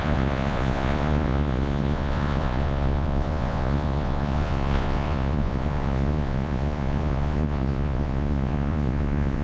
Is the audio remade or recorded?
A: remade